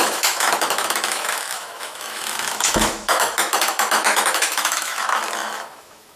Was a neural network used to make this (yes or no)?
yes